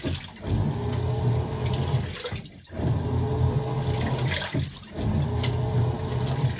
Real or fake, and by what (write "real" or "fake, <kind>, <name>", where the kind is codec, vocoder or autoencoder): real